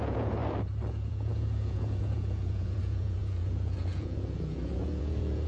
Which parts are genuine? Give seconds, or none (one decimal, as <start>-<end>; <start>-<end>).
0.4-0.9